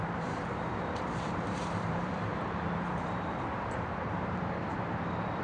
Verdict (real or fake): fake